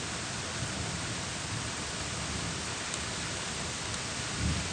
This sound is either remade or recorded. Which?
recorded